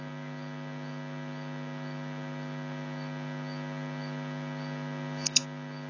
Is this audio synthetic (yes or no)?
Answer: no